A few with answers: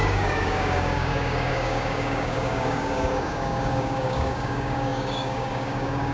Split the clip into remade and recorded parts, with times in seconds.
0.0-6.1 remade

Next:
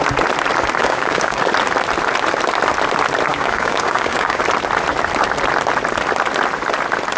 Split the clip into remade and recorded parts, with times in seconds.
0.0-0.8 recorded; 0.8-1.4 remade; 1.4-3.3 recorded; 3.3-4.4 remade; 4.4-7.2 recorded

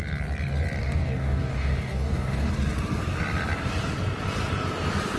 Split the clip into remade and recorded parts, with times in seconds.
0.0-0.8 recorded; 0.8-2.5 remade; 2.5-5.2 recorded

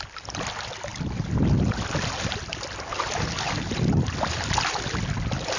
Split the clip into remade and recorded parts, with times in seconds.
0.0-5.6 recorded

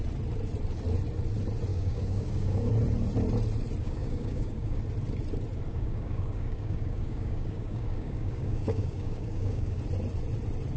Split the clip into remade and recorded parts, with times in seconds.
0.0-1.7 recorded; 1.7-2.7 remade; 2.7-3.8 recorded; 3.8-4.8 remade; 4.8-5.7 recorded; 5.7-9.8 remade; 9.8-10.8 recorded

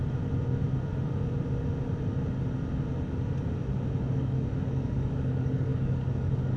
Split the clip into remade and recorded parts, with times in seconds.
0.0-4.0 recorded; 4.0-6.6 remade